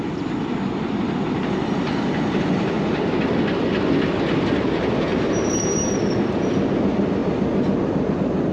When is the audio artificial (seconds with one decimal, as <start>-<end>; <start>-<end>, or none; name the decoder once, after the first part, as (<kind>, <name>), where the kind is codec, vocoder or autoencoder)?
5.1-6.1 (vocoder, BigVGAN v2)